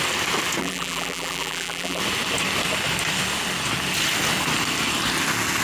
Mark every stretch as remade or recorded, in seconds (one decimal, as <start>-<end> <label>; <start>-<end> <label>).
0.0-0.6 recorded; 0.6-2.0 remade; 2.0-5.6 recorded